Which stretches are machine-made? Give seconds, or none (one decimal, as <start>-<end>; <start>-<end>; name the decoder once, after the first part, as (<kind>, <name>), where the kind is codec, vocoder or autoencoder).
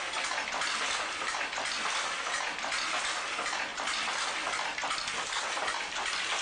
none